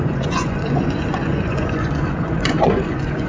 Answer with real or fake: fake